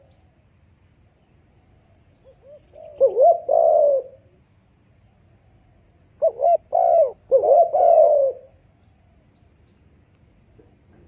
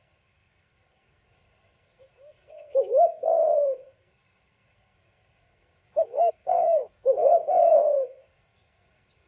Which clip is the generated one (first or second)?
second